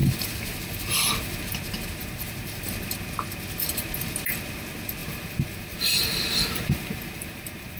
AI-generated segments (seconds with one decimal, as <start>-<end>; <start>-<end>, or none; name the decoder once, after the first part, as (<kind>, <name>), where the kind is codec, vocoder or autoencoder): 0.0-1.4 (vocoder, BigVGAN v2); 2.0-2.6; 5.0-7.8